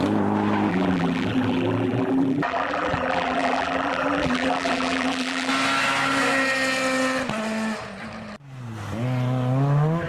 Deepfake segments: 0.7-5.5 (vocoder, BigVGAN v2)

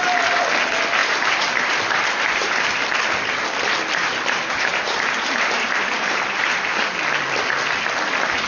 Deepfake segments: 1.0-2.5 (vocoder, BigVGAN v2); 4.0-6.8

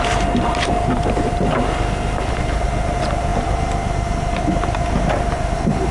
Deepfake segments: 0.0-5.9 (vocoder, BigVGAN v2)

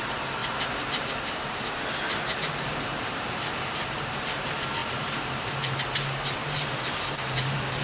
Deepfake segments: 0.0-7.8 (vocoder, BigVGAN v2)

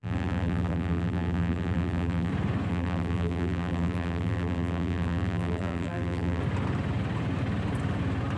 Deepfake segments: 0.0-2.3 (vocoder, BigVGAN v2); 2.7-6.4

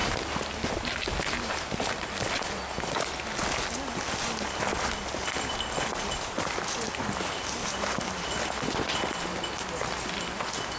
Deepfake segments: 0.0-2.0 (vocoder, BigVGAN v2); 7.6-8.3

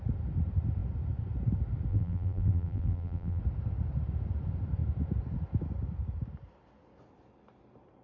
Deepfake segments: 1.9-3.4 (vocoder, BigVGAN v2)